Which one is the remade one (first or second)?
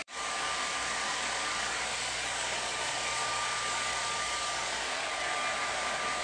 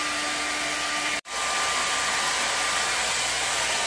first